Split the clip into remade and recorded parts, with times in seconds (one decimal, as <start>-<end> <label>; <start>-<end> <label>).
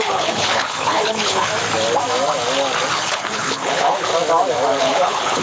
0.0-1.5 remade; 1.5-2.9 recorded; 2.9-4.1 remade; 4.1-4.8 recorded; 4.8-5.4 remade